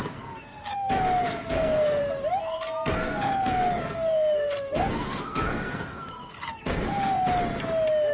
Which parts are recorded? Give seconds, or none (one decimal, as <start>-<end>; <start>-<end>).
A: 2.0-2.4; 7.3-8.1